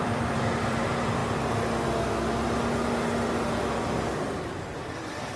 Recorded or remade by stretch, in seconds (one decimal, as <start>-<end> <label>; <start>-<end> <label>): 0.0-1.2 remade; 1.2-4.4 recorded; 4.4-5.4 remade